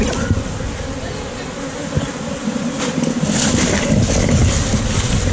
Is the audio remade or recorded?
recorded